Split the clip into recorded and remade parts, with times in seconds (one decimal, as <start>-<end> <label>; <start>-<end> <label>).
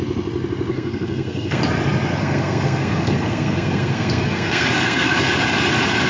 0.0-0.7 recorded; 0.7-1.6 remade; 1.6-2.2 recorded; 2.2-5.3 remade; 5.3-6.1 recorded